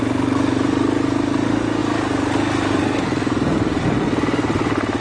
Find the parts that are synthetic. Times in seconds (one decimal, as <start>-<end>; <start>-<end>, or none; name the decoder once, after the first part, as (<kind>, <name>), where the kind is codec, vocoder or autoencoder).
none